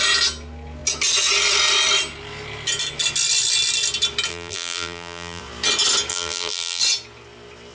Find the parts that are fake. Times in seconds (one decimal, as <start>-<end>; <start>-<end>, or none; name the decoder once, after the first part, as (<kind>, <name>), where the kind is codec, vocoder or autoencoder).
4.3-5.4 (vocoder, BigVGAN v2); 6.1-6.8